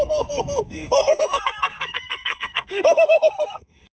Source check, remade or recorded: remade